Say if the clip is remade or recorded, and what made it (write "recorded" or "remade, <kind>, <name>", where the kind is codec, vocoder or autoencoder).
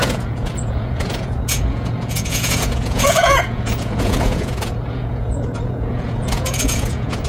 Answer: remade, vocoder, Vocos